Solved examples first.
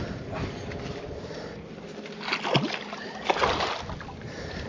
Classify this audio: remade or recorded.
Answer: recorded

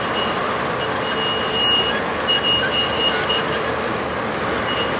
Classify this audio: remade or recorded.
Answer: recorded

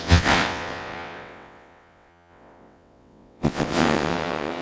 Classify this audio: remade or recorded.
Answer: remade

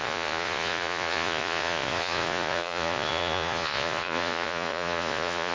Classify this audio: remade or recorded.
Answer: remade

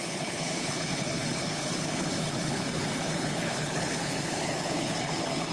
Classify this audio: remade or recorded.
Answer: remade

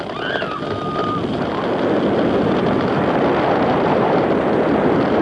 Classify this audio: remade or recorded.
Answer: recorded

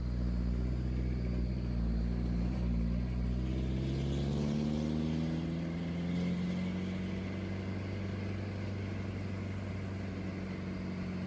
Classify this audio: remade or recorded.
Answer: recorded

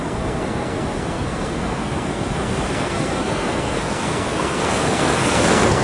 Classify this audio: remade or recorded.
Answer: remade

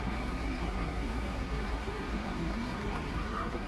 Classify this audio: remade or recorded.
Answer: remade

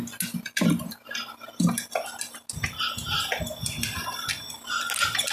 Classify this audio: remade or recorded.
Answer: recorded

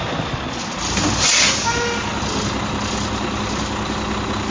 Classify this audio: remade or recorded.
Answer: recorded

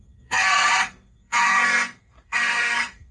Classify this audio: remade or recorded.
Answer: remade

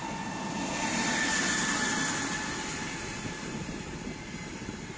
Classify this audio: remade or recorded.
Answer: recorded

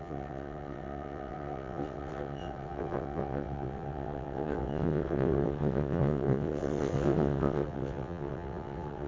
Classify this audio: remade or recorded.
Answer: remade